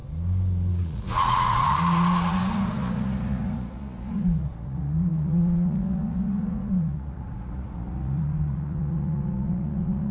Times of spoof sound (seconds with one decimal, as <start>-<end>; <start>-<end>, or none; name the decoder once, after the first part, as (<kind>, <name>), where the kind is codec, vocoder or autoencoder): 0.7-10.1 (vocoder, Vocos)